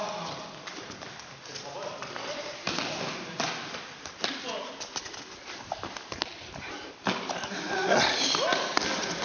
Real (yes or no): yes